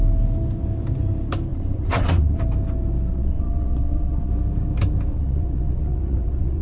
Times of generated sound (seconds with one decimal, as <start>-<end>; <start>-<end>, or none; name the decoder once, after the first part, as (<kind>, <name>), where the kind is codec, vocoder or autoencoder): 1.5-2.4 (vocoder, WaveNeXt); 3.1-4.3; 5.1-6.6